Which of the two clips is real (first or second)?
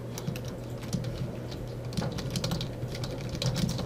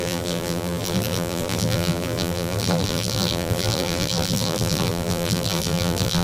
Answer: first